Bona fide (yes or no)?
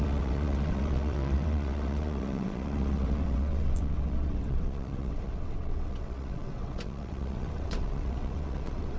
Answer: no